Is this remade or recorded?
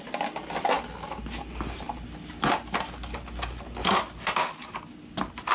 recorded